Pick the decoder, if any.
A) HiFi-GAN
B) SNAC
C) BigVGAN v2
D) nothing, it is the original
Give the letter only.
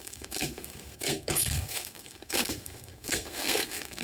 B